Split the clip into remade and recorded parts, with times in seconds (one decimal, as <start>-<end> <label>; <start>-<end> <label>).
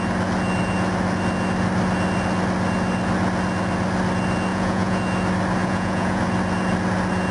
0.0-4.5 recorded; 4.5-5.0 remade; 5.0-5.6 recorded; 5.6-6.2 remade; 6.2-7.3 recorded